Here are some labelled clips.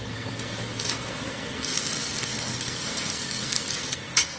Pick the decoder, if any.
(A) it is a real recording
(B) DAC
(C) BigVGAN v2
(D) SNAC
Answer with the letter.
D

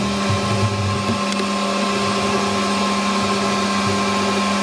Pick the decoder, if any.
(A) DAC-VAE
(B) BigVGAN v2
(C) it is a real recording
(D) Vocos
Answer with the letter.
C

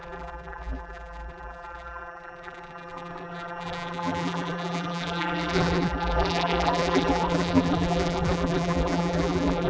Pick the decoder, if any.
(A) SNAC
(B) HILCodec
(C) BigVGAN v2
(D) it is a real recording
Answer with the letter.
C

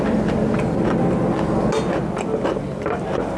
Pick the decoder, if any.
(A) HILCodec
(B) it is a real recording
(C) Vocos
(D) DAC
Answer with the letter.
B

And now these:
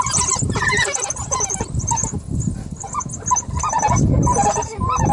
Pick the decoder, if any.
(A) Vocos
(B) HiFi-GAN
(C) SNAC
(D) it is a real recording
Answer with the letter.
D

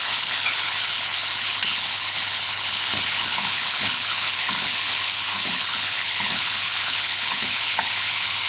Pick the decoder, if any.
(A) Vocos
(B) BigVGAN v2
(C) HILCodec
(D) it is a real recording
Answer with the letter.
C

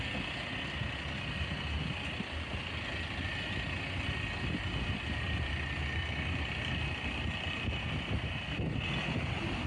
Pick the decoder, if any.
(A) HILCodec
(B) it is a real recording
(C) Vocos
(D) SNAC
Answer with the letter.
B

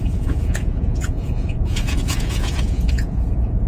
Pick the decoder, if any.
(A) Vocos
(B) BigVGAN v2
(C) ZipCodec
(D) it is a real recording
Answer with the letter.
A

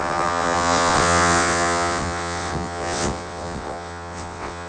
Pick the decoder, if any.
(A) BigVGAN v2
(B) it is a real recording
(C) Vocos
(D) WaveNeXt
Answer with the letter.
D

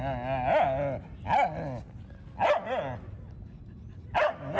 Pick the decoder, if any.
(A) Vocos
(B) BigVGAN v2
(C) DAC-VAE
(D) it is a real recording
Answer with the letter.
D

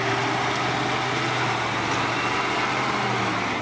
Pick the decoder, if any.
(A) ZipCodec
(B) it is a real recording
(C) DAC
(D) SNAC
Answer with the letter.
B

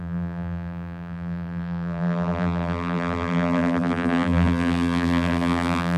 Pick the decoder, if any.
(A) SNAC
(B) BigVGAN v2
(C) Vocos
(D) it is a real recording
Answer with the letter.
B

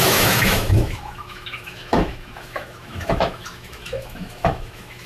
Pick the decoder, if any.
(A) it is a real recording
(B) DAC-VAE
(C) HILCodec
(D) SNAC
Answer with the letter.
B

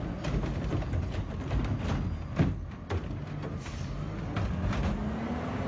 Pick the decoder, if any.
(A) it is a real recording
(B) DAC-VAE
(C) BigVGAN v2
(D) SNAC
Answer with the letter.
A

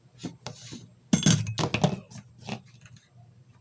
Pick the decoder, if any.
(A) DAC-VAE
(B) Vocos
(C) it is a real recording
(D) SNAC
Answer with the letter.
C